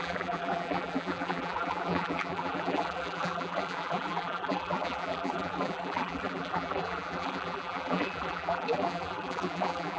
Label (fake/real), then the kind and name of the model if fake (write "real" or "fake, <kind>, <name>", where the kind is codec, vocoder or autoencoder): fake, vocoder, BigVGAN v2